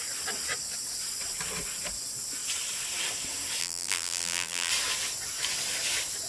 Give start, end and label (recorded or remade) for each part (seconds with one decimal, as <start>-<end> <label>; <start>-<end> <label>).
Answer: 0.0-3.6 recorded; 3.6-4.7 remade; 4.7-6.3 recorded